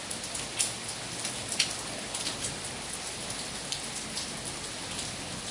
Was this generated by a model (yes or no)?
no